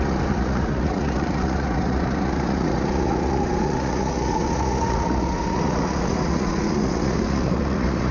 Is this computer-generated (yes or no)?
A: yes